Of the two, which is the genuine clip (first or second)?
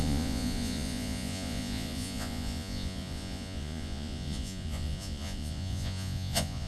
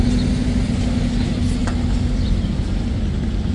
second